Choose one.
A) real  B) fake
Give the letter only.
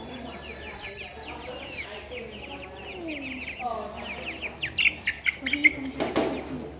A